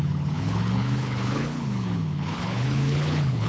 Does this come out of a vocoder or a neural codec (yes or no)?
yes